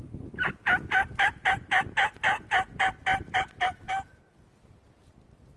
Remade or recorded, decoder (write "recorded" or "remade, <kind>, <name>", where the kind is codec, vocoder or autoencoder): recorded